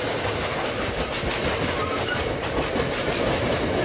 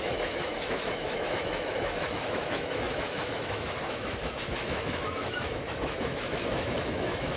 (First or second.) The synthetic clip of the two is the second